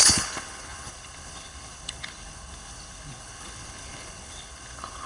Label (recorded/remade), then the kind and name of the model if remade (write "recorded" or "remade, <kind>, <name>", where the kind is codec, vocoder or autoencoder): remade, codec, HILCodec